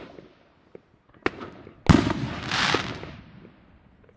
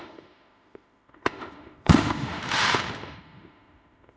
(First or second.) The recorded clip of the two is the first